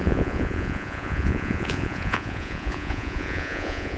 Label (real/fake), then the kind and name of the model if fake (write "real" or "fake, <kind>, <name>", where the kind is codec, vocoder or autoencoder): fake, vocoder, Vocos